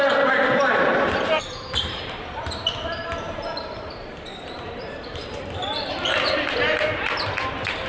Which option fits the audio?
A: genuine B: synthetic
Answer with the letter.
B